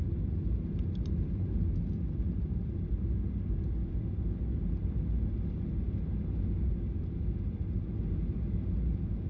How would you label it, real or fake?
real